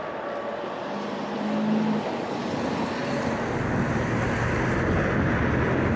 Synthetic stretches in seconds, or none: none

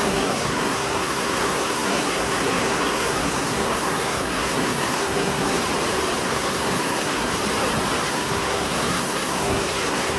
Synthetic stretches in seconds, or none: 0.0-5.6 (codec, SNAC); 6.2-7.3; 8.1-10.2

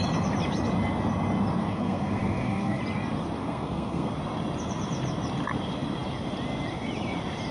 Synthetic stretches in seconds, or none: 1.6-2.8 (codec, SNAC); 3.4-4.1

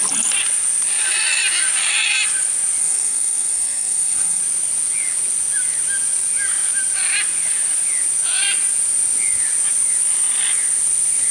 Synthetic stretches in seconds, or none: 2.8-4.4 (codec, SNAC)

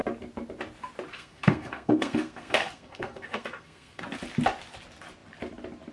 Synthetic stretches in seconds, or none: 1.1-4.0 (codec, SNAC)

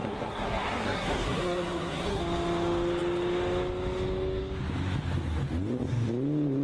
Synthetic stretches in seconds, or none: 0.0-2.2 (codec, SNAC)